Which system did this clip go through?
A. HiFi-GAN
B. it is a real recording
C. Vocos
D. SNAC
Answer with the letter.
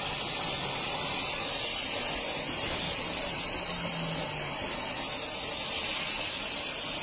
B